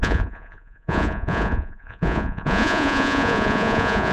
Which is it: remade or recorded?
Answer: remade